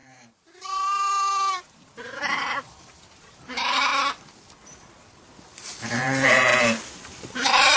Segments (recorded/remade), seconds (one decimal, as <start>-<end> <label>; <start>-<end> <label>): 0.0-3.9 remade; 3.9-5.8 recorded; 5.8-6.5 remade; 6.5-7.2 recorded; 7.2-7.8 remade